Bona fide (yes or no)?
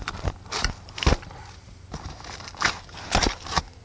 yes